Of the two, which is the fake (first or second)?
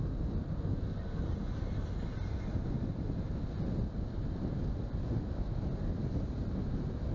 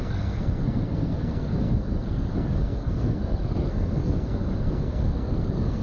second